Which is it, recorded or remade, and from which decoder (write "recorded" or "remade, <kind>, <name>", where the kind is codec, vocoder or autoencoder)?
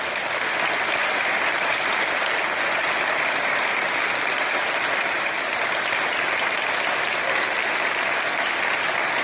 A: recorded